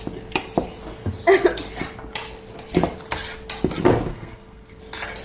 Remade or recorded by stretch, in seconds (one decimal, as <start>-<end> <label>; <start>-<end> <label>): 0.0-4.1 recorded; 4.1-4.8 remade; 4.8-5.2 recorded